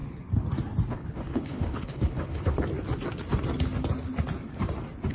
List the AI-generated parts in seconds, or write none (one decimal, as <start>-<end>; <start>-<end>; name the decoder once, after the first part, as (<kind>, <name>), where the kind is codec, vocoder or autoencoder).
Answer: 0.9-2.6 (codec, HILCodec)